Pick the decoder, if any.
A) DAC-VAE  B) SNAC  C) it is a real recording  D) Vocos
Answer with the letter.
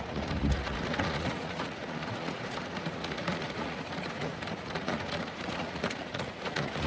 D